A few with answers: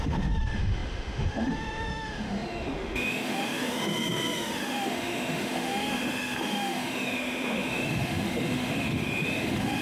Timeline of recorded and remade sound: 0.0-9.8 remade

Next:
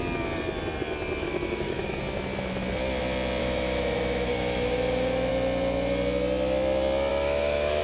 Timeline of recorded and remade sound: 0.0-1.2 recorded; 1.2-2.0 remade; 2.0-3.4 recorded; 3.4-5.3 remade; 5.3-7.1 recorded; 7.1-7.8 remade

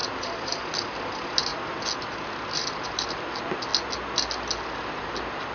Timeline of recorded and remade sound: 0.0-0.6 remade; 0.6-5.5 recorded